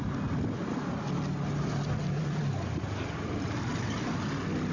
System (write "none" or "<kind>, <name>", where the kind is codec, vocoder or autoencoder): none